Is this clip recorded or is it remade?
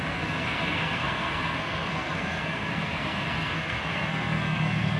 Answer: remade